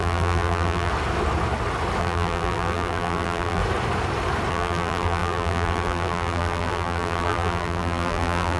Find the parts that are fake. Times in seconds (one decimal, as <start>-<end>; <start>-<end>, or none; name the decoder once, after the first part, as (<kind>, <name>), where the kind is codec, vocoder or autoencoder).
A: 0.0-0.9 (vocoder, BigVGAN v2); 2.0-3.6; 4.5-8.6